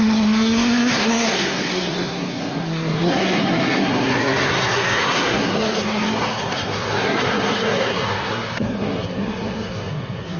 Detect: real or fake fake